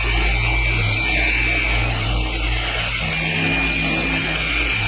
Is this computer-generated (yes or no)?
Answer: no